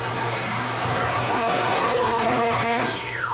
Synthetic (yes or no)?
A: yes